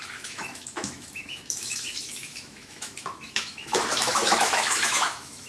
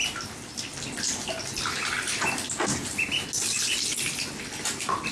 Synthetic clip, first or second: first